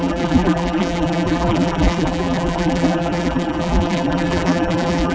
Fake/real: fake